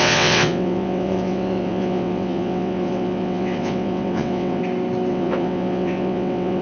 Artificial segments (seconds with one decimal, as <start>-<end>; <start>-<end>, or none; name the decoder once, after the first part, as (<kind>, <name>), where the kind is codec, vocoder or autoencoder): 0.0-4.6 (vocoder, WaveNeXt); 5.1-6.6